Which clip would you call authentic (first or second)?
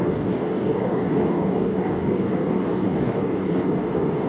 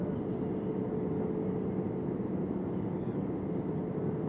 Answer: second